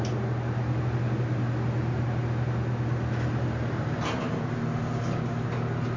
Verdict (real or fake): real